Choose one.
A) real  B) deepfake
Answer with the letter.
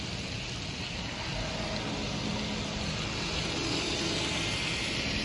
A